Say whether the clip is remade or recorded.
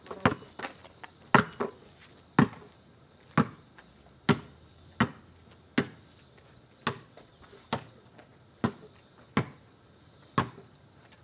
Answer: recorded